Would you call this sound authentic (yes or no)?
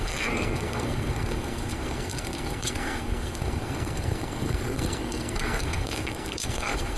no